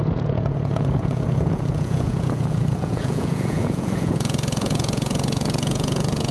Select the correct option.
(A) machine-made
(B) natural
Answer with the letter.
A